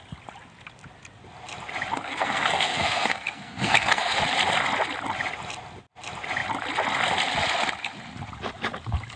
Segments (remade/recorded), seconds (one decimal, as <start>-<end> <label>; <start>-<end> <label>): 0.0-1.9 recorded; 1.9-4.2 remade; 4.2-9.2 recorded